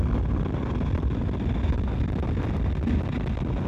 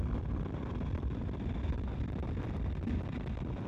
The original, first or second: first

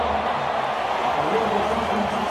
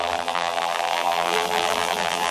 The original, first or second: first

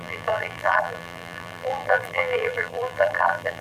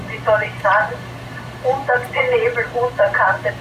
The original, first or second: second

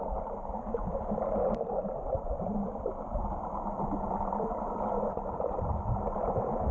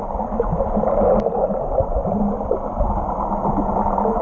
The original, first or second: second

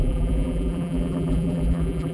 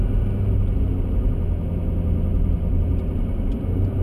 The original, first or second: second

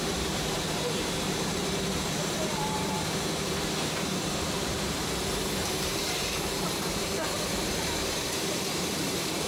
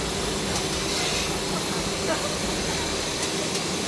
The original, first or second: second